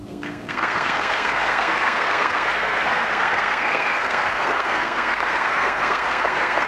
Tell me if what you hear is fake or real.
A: fake